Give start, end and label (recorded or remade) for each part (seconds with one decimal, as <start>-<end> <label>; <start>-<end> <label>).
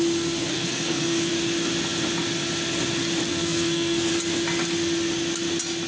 0.0-0.5 recorded; 0.5-1.3 remade; 1.3-3.3 recorded; 3.3-4.1 remade; 4.1-5.9 recorded